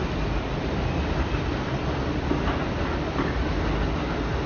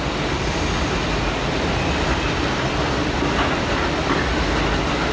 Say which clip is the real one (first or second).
second